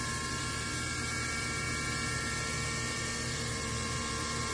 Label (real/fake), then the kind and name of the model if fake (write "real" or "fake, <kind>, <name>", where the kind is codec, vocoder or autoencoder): fake, vocoder, BigVGAN v2